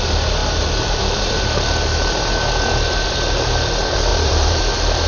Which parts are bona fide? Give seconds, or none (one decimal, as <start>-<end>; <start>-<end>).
0.0-0.4; 1.3-4.1; 4.6-5.1